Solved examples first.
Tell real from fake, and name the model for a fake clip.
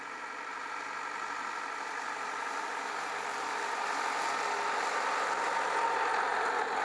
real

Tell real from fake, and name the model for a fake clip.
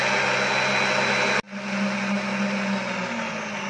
real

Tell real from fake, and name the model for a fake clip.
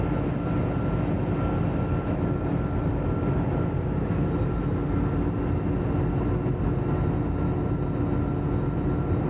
real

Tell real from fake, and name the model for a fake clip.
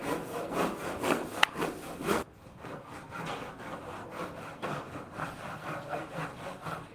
fake, codec, SNAC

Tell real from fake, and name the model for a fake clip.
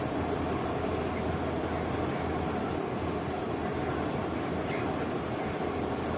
real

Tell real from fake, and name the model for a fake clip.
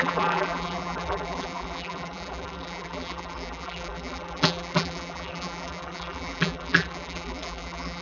fake, vocoder, BigVGAN v2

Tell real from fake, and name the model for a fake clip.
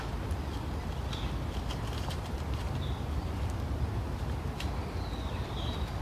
real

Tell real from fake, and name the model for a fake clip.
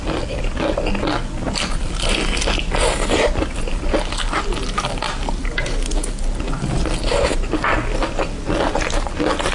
real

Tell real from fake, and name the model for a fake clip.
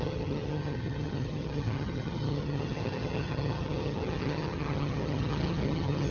fake, vocoder, HiFi-GAN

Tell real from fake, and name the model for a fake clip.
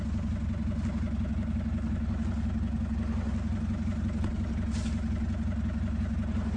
real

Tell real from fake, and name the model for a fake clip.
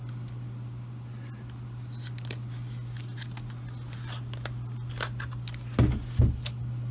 real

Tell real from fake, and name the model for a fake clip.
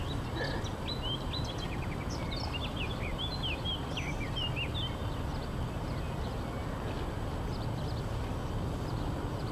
real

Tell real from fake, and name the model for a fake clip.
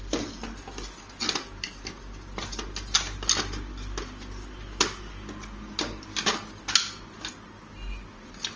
real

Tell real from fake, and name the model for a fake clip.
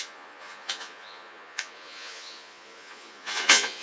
fake, vocoder, Vocos